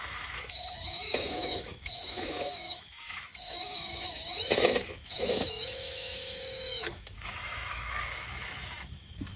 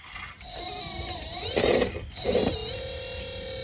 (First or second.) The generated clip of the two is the first